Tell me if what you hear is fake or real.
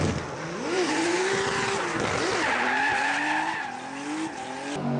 real